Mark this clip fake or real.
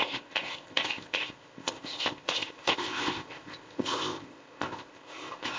fake